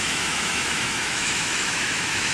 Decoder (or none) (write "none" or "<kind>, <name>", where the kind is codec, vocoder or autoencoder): autoencoder, DAC-VAE